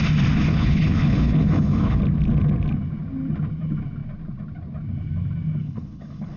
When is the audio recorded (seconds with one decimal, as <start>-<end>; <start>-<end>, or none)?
0.0-0.5; 2.0-5.6